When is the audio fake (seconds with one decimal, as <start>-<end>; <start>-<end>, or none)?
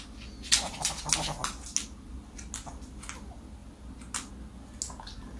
none